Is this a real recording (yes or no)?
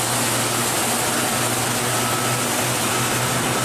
yes